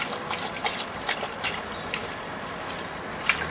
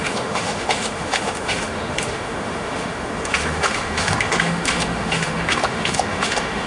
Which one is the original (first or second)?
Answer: first